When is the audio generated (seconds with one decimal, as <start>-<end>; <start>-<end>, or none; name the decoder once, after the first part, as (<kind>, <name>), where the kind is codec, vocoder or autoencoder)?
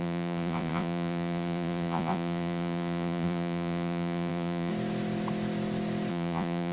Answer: 0.0-4.7 (vocoder, Vocos); 6.1-6.7